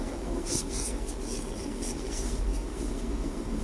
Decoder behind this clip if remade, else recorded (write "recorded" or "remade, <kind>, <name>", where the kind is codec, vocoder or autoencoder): remade, codec, SNAC